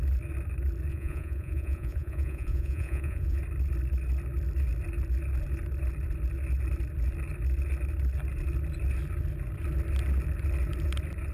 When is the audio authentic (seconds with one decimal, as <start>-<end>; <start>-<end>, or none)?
0.0-0.9; 3.4-11.3